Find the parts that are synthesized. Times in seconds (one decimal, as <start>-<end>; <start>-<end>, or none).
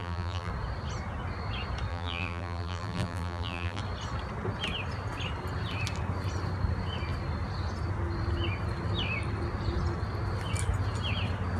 0.0-0.5; 1.9-3.8